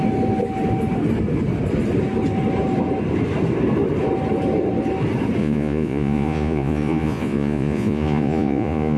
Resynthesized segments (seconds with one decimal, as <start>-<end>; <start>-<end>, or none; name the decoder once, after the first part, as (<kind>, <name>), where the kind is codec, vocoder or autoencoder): 5.4-9.0 (vocoder, Vocos)

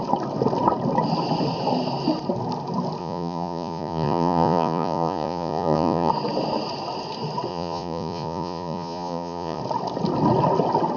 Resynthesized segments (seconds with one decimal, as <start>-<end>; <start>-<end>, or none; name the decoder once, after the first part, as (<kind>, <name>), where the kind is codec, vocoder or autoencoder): 3.0-6.1 (vocoder, Vocos); 7.5-9.6

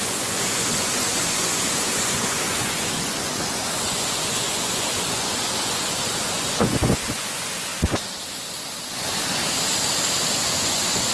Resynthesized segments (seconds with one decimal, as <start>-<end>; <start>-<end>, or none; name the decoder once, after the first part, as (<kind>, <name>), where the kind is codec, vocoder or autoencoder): 0.0-7.7 (vocoder, Vocos); 8.3-9.4; 10.6-11.1

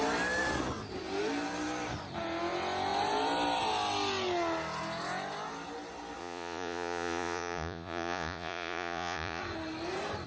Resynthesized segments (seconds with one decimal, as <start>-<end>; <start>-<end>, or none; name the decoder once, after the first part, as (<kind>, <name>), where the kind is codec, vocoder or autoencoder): 6.2-9.4 (vocoder, Vocos)

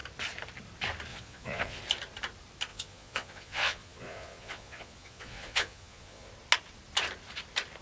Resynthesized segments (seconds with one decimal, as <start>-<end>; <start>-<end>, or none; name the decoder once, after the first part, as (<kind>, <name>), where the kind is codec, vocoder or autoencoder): 1.1-1.8 (vocoder, Vocos); 2.7-6.3

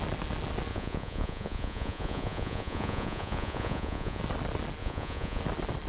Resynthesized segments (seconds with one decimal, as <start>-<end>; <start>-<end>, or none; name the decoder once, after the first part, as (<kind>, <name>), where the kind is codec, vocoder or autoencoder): 0.7-4.2 (vocoder, Vocos); 4.8-5.4

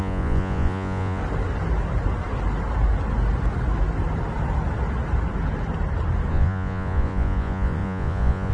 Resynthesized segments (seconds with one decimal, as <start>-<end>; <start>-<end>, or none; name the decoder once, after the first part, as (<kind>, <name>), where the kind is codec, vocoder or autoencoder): 0.0-1.2 (vocoder, Vocos); 6.3-8.5

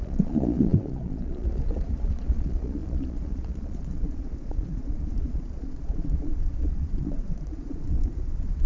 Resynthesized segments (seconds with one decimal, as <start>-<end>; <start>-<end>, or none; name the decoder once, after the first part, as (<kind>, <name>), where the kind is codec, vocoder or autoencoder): 0.0-8.7 (vocoder, Vocos)